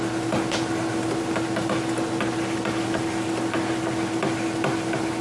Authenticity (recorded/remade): remade